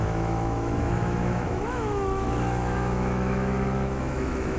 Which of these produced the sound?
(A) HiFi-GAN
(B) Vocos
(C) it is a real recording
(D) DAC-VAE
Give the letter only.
D